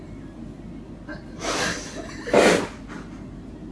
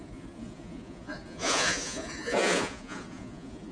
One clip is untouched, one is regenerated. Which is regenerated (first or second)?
second